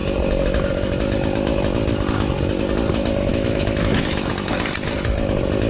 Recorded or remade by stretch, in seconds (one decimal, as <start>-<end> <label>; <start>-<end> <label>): 0.0-3.3 recorded; 3.3-4.3 remade; 4.3-5.7 recorded